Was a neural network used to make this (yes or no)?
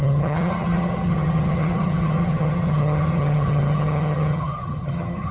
yes